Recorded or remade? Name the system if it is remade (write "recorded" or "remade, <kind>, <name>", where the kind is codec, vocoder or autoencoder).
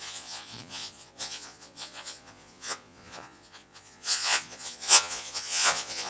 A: remade, vocoder, Vocos